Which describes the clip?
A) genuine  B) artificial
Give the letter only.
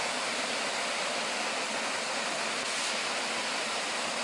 A